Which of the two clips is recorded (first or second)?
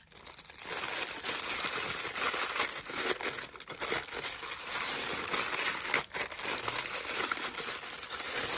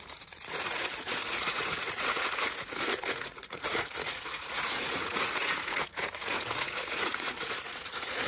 first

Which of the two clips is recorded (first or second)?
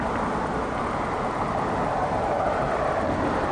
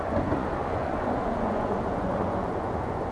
first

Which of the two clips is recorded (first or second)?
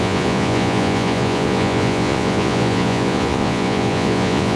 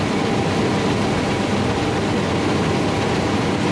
second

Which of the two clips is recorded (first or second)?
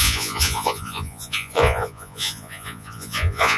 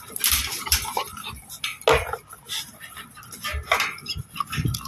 second